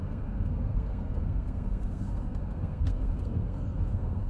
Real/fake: fake